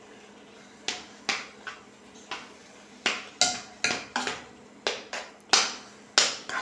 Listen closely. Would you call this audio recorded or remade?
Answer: recorded